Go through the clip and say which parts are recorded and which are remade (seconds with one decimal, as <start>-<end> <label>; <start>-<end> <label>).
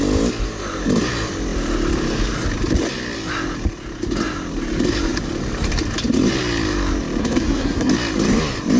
0.0-7.2 recorded; 7.2-7.9 remade; 7.9-8.8 recorded